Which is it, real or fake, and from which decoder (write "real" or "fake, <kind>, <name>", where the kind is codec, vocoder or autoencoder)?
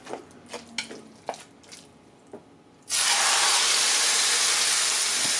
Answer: real